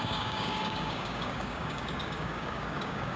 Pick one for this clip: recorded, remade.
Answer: remade